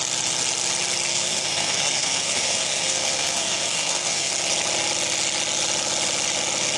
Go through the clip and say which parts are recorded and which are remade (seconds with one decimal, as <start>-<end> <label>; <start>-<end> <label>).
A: 0.0-1.1 recorded; 1.1-4.3 remade; 4.3-6.8 recorded